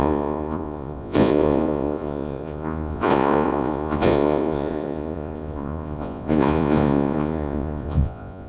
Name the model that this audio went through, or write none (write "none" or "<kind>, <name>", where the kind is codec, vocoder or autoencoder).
vocoder, Vocos